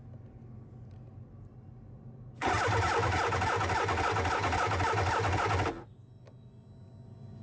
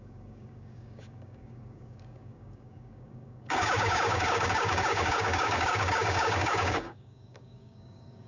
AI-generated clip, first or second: second